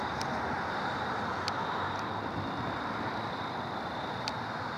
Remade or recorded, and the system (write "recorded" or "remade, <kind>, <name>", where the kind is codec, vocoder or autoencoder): remade, vocoder, BigVGAN v2